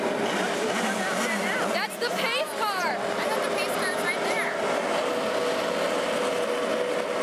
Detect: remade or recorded recorded